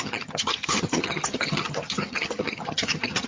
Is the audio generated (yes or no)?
yes